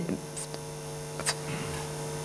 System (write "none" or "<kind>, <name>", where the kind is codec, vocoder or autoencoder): none